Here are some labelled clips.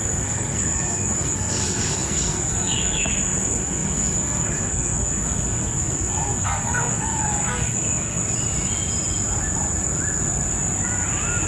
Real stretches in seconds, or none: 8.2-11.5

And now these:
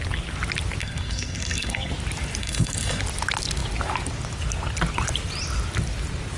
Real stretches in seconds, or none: 0.0-0.8; 1.9-2.4; 3.0-6.4

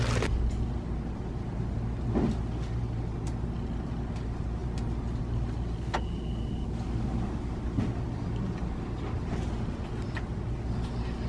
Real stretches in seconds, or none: 0.0-11.3

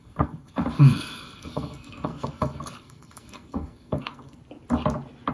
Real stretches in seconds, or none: 4.4-5.3

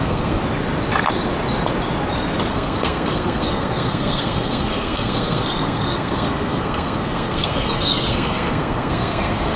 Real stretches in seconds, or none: 0.4-2.5

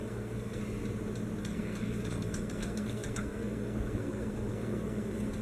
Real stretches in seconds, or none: 0.6-1.4

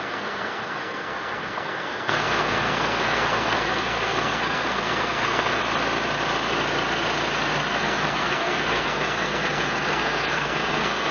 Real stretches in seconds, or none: 5.6-7.7